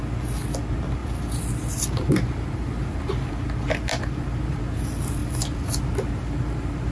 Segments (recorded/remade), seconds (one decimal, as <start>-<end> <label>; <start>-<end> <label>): 0.0-1.0 recorded; 1.0-3.3 remade; 3.3-3.9 recorded; 3.9-4.6 remade; 4.6-5.2 recorded; 5.2-5.9 remade; 5.9-6.9 recorded